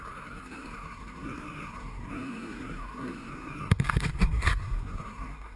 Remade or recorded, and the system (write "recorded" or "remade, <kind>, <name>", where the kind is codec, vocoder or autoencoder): remade, codec, SNAC